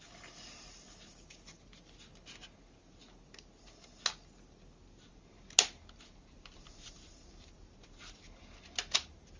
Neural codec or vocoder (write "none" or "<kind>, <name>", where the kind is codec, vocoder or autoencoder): none